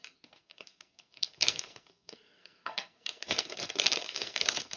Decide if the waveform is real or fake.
fake